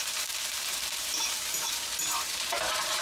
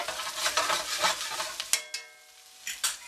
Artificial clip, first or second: first